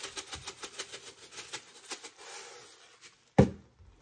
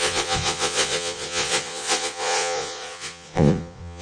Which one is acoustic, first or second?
first